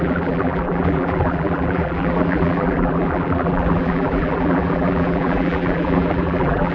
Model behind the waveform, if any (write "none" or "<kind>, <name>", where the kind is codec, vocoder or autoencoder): vocoder, BigVGAN v2